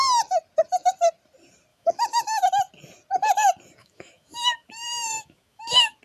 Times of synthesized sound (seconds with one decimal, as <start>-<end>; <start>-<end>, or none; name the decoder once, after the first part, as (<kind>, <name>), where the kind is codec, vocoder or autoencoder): 1.7-2.5 (autoencoder, DAC-VAE); 3.8-6.0